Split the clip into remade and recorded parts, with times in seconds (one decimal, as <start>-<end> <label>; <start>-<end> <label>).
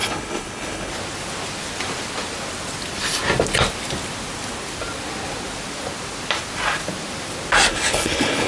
0.0-0.9 remade; 0.9-7.7 recorded; 7.7-8.5 remade